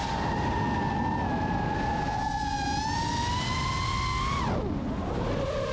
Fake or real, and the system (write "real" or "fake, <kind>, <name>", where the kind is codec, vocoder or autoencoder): real